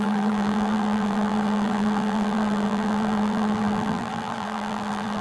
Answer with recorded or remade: remade